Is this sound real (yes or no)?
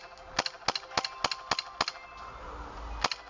yes